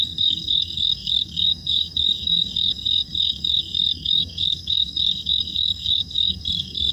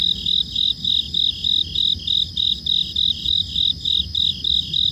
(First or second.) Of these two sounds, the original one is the second